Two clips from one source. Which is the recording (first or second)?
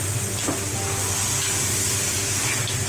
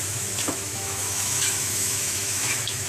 first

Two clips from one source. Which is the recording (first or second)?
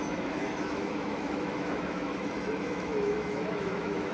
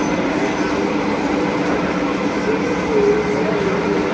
second